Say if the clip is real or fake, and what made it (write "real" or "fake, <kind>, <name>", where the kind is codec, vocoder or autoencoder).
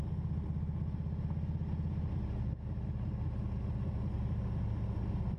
real